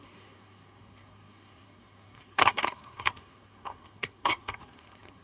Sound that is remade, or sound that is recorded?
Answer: remade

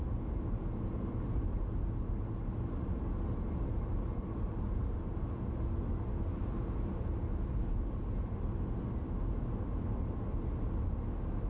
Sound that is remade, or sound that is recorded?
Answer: recorded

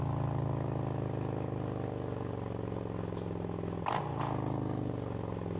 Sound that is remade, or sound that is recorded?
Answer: recorded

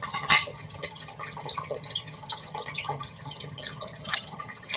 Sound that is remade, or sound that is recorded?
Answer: remade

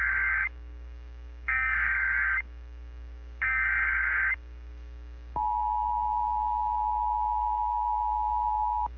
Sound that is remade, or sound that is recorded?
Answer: remade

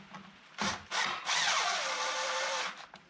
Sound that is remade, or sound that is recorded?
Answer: remade